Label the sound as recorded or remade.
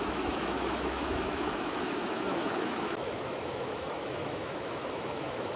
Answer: remade